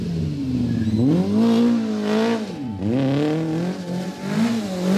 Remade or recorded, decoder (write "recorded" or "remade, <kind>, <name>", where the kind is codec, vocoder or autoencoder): recorded